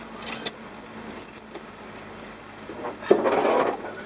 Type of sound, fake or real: real